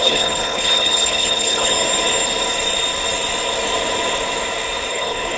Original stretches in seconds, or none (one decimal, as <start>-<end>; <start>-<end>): 1.7-4.9